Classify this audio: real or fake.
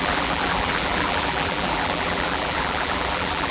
fake